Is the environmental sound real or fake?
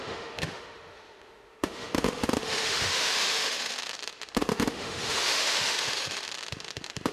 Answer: fake